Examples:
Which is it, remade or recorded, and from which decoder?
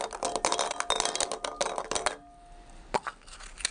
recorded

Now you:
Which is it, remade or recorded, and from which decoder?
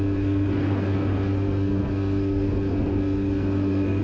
remade, codec, SNAC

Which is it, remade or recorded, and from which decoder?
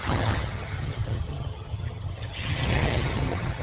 remade, vocoder, HiFi-GAN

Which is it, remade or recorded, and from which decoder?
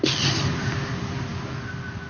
recorded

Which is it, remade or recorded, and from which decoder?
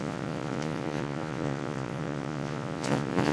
remade, vocoder, Vocos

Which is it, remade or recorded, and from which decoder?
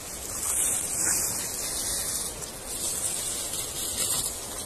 recorded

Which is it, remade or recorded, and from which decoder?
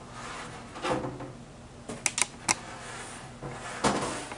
recorded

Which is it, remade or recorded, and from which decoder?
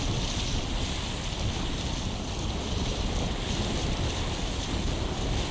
recorded